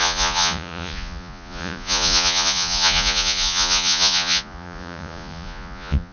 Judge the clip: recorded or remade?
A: remade